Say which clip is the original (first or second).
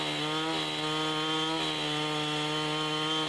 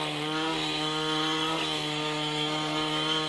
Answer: first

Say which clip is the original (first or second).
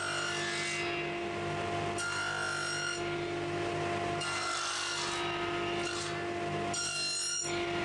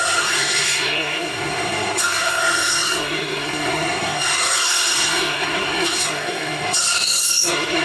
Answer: first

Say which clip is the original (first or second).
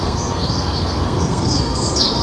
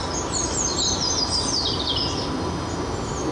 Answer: second